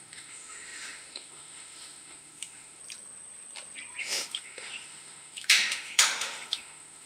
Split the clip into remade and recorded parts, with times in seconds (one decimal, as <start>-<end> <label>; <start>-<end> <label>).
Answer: 0.0-2.8 remade; 2.8-4.0 recorded; 4.0-7.1 remade